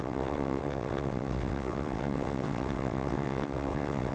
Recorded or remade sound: remade